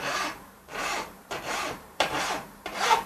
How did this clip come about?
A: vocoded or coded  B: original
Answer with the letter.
A